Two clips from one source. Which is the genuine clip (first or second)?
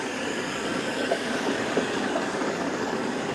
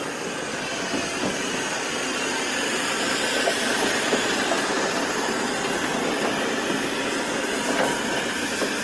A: second